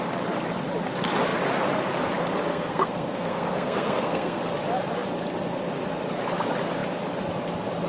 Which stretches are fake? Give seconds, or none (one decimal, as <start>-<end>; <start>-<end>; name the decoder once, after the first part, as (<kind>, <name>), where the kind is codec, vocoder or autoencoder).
2.5-4.4 (codec, SNAC)